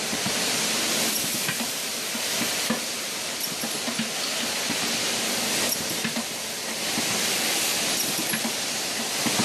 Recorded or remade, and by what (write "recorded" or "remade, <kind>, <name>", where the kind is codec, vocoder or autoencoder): remade, vocoder, BigVGAN v2